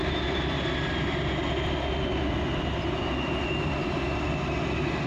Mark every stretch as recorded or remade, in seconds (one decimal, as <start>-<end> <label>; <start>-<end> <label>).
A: 0.0-5.1 recorded

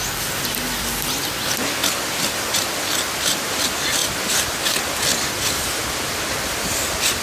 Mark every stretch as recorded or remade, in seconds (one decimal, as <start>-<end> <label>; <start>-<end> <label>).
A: 0.0-7.2 recorded

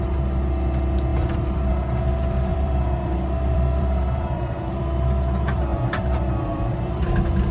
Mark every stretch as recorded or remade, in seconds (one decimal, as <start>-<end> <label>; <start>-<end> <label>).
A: 0.0-1.1 recorded; 1.1-1.7 remade; 1.7-2.5 recorded; 2.5-4.8 remade; 4.8-5.7 recorded; 5.7-6.9 remade; 6.9-7.5 recorded

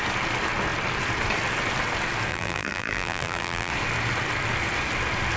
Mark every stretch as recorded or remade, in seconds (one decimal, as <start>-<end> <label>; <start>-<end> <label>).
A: 0.0-2.3 recorded; 2.3-3.7 remade; 3.7-5.4 recorded

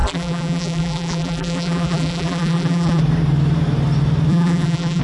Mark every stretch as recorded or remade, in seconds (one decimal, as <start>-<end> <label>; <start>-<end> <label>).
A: 0.0-3.0 remade; 3.0-4.3 recorded; 4.3-5.0 remade

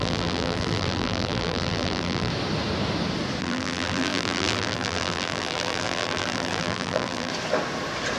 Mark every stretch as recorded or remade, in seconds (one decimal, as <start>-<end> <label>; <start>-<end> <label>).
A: 0.0-2.3 remade; 2.3-3.4 recorded; 3.4-7.3 remade; 7.3-8.2 recorded

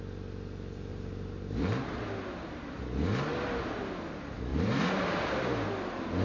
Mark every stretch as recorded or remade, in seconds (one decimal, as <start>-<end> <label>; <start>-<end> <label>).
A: 0.0-0.9 recorded; 0.9-1.8 remade; 1.8-4.5 recorded; 4.5-5.2 remade; 5.2-6.2 recorded

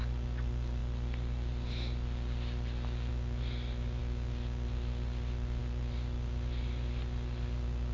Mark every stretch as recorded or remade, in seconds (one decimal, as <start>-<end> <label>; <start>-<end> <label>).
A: 0.0-0.8 recorded; 0.8-3.1 remade; 3.1-7.9 recorded